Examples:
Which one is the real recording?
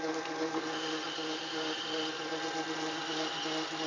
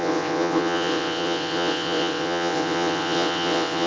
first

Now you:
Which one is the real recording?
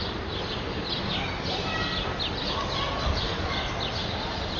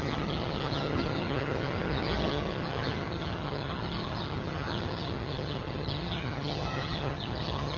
first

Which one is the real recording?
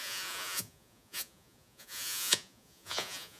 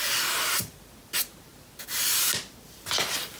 second